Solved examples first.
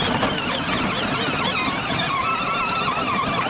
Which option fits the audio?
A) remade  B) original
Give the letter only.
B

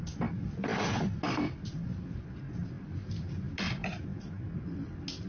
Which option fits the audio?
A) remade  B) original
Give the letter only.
B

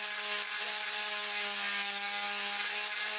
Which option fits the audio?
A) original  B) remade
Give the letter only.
A